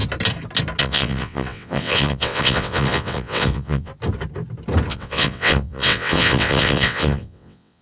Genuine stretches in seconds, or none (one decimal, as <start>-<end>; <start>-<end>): 0.0-0.8; 3.9-4.9